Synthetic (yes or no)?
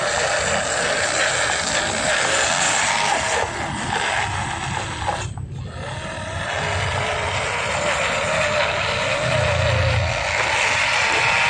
no